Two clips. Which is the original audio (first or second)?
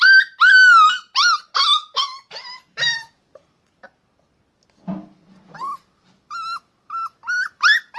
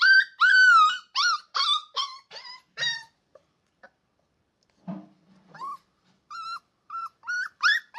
first